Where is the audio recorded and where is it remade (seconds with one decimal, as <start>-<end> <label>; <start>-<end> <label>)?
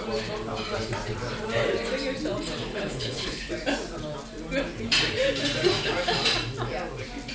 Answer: 0.0-2.7 recorded; 2.7-3.5 remade; 3.5-7.3 recorded